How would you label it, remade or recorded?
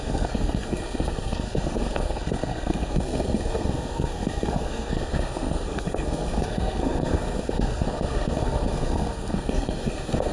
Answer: remade